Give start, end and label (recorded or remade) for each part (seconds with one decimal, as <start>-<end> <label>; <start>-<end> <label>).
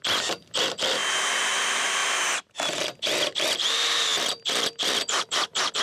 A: 0.0-1.0 remade; 1.0-1.5 recorded; 1.5-2.0 remade; 2.0-2.8 recorded; 2.8-5.8 remade